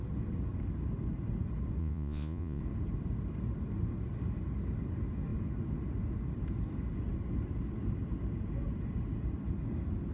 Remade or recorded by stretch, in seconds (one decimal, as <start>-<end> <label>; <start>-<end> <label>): 0.0-1.8 recorded; 1.8-2.6 remade; 2.6-10.1 recorded